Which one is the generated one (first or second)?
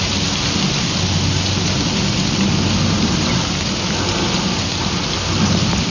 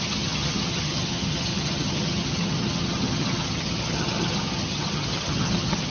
second